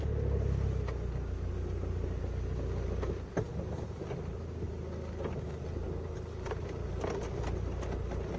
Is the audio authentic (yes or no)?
yes